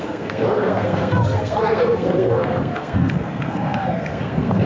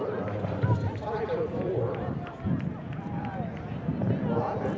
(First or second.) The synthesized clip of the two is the first